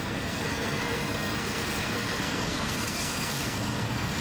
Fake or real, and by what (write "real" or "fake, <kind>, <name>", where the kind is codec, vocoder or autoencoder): fake, codec, SNAC